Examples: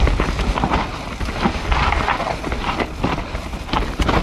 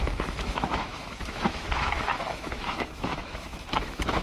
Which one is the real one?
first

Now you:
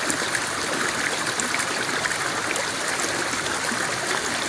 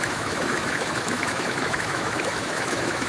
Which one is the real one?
first